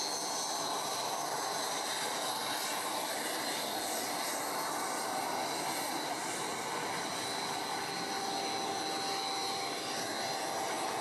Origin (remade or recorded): recorded